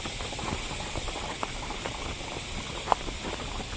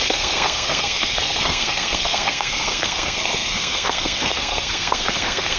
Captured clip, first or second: first